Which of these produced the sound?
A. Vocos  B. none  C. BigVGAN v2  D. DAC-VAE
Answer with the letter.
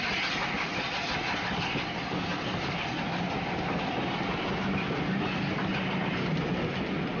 B